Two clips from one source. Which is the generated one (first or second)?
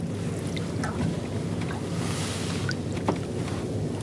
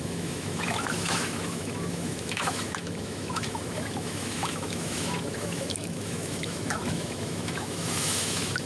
second